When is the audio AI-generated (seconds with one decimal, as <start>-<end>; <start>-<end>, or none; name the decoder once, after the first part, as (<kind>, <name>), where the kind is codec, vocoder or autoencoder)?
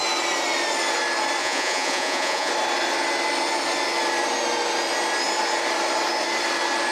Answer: 1.4-2.5 (vocoder, Vocos)